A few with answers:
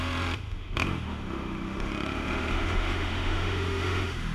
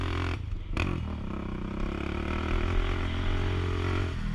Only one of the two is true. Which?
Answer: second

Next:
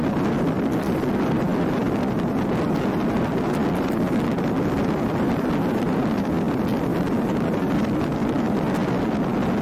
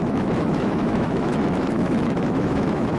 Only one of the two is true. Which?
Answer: first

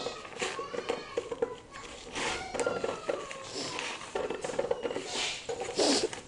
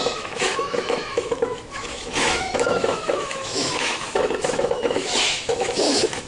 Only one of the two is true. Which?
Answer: first